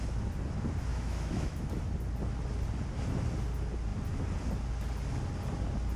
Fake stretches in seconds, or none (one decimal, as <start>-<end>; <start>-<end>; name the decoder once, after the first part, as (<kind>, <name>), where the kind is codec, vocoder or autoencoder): 0.9-1.7 (autoencoder, DAC-VAE)